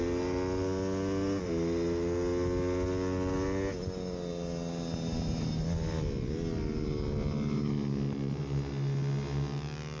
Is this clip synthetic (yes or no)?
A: no